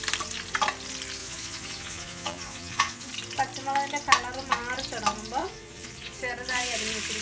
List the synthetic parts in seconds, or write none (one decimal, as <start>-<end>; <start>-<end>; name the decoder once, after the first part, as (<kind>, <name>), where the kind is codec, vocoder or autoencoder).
1.2-3.1 (vocoder, Vocos); 5.4-6.2